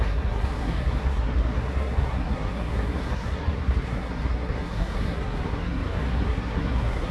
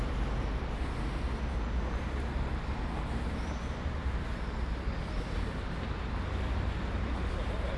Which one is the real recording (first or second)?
second